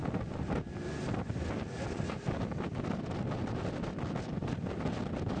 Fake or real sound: real